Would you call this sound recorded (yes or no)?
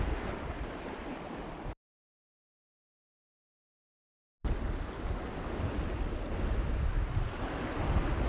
yes